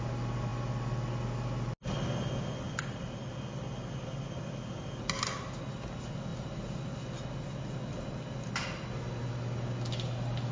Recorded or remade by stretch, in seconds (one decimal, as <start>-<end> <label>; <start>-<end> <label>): 0.0-10.5 recorded